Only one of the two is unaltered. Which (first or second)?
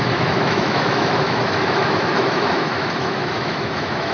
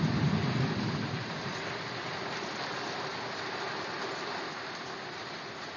second